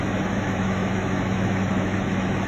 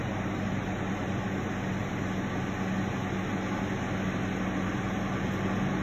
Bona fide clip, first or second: second